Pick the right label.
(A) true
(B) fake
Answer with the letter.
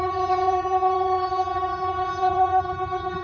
B